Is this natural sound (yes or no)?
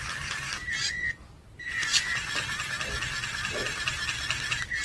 yes